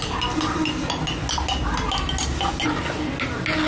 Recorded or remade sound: recorded